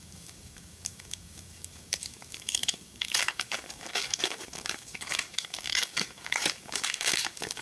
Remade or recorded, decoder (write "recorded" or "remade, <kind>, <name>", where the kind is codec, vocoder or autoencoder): remade, codec, DAC